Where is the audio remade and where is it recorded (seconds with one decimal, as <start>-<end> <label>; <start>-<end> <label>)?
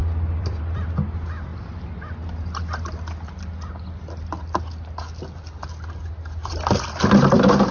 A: 0.0-0.6 remade; 0.6-7.7 recorded